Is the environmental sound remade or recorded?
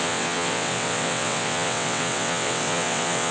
remade